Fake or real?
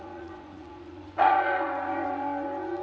fake